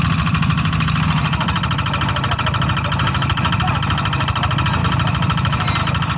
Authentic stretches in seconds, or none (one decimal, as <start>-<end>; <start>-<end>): 0.0-4.8; 5.8-6.2